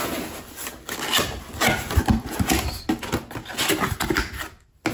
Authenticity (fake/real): real